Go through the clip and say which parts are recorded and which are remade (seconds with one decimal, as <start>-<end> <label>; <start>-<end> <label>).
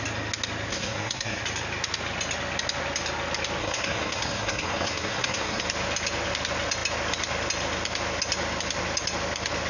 0.0-0.7 recorded; 0.7-1.4 remade; 1.4-3.6 recorded; 3.6-5.6 remade; 5.6-9.7 recorded